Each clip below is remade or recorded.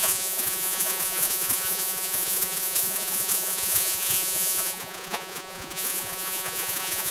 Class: remade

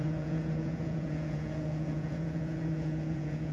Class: remade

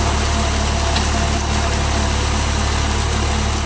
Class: recorded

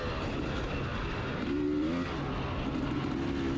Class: recorded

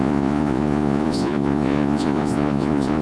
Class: remade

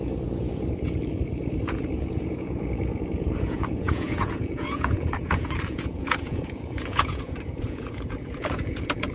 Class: remade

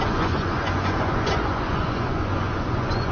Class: remade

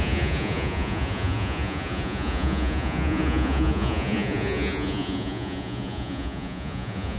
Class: remade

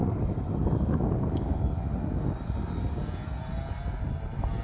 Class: recorded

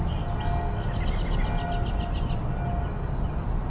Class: recorded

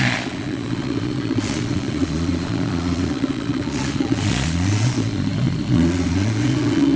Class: remade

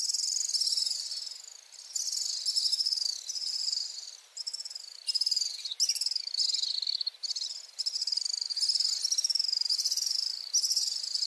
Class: recorded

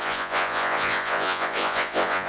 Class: remade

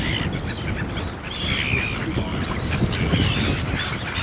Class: recorded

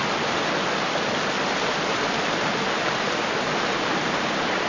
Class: recorded